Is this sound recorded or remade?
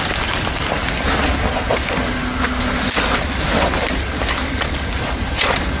recorded